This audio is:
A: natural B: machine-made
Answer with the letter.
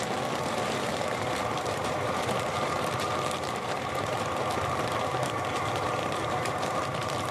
B